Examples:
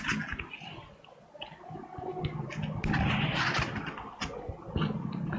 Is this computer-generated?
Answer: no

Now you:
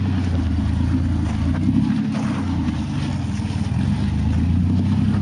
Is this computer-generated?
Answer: no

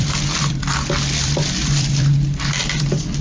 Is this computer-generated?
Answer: yes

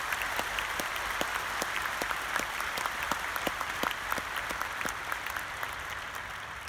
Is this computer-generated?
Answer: yes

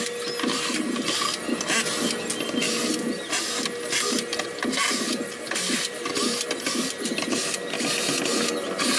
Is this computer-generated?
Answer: no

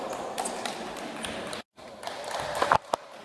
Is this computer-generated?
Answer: no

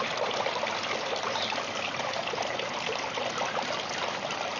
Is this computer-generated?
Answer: no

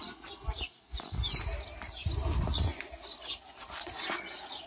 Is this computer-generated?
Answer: no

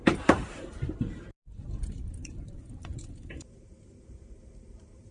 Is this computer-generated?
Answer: yes